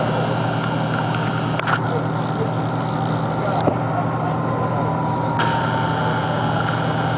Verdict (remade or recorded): recorded